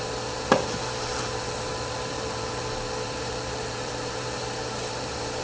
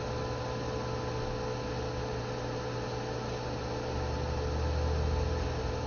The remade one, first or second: first